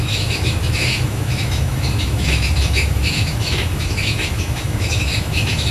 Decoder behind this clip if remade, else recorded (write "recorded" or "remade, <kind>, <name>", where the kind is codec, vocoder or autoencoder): remade, autoencoder, DAC-VAE